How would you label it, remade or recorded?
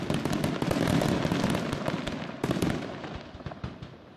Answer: recorded